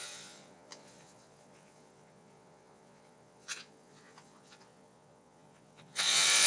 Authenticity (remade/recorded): remade